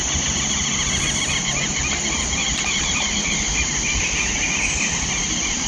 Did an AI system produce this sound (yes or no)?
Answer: no